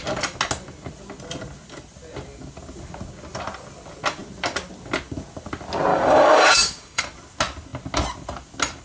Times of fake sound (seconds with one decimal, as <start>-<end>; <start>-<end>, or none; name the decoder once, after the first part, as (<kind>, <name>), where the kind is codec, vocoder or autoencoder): 5.9-7.0 (codec, DAC)